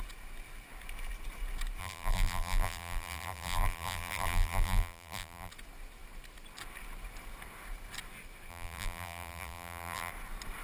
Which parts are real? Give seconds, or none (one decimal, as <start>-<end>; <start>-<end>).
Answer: 0.0-1.8; 5.5-8.5; 10.1-10.6